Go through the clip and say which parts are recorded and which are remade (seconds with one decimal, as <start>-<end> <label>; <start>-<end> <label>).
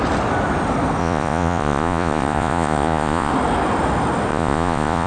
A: 0.0-1.0 recorded; 1.0-3.3 remade; 3.3-4.3 recorded; 4.3-5.1 remade